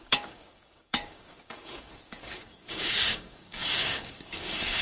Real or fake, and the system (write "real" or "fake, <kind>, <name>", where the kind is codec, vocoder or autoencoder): fake, codec, DAC